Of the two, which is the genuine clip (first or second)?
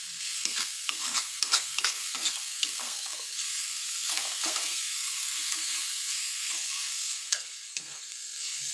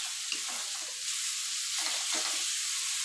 second